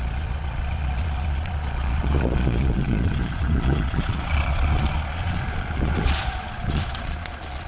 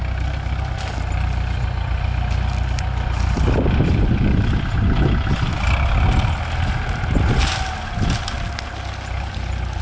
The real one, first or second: second